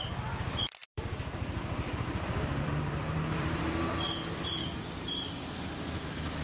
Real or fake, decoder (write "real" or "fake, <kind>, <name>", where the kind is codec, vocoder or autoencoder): fake, vocoder, BigVGAN v2